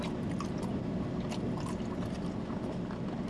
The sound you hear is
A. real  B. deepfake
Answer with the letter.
A